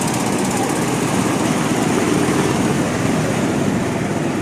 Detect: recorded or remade recorded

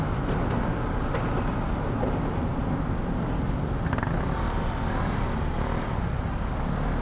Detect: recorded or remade recorded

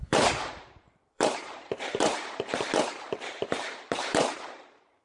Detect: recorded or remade remade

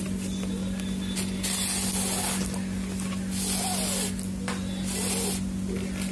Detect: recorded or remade recorded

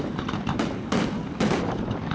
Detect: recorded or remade remade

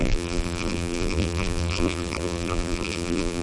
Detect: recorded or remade remade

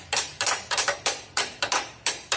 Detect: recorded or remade remade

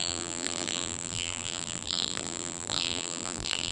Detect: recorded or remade remade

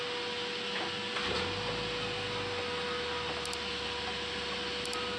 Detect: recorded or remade recorded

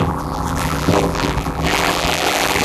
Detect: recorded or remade remade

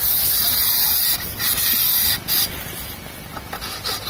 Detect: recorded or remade recorded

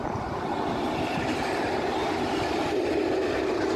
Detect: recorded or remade remade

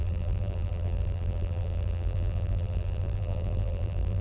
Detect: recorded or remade remade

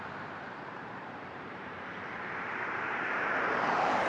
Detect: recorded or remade remade